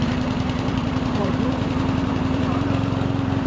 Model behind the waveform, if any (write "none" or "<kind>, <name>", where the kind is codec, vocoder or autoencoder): vocoder, BigVGAN v2